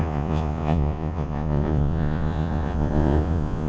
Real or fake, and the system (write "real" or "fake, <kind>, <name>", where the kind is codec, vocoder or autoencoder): fake, vocoder, Vocos